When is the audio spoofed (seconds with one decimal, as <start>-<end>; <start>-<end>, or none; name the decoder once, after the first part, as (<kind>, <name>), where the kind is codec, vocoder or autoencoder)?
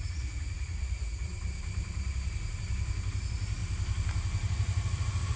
0.0-1.3 (vocoder, Vocos); 3.2-3.6; 4.5-5.4